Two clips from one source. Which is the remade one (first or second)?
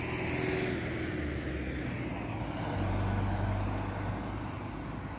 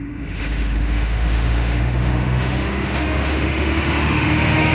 second